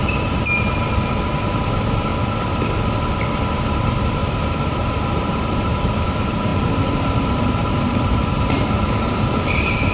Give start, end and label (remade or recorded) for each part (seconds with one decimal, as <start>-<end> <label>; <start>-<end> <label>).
0.0-2.1 remade; 2.1-3.7 recorded; 3.7-9.9 remade

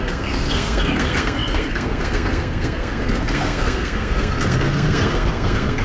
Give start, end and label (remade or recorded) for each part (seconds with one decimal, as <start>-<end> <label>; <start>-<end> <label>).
0.0-5.8 remade

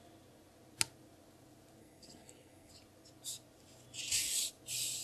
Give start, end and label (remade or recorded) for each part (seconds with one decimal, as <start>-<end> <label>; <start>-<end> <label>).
0.0-1.8 recorded; 1.8-2.7 remade; 2.7-5.0 recorded